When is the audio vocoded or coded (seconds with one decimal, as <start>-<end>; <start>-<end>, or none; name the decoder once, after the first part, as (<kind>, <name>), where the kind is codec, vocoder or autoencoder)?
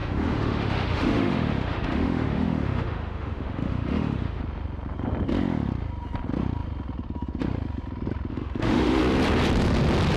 0.0-4.4 (autoencoder, DAC-VAE); 8.3-9.0